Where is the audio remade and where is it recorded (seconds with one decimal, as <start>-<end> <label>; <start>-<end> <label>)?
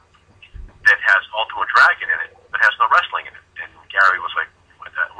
0.0-5.2 recorded